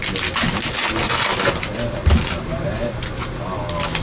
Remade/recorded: recorded